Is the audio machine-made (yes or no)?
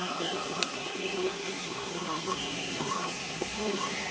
yes